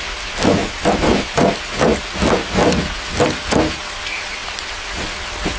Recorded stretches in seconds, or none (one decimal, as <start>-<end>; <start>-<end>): 0.0-5.6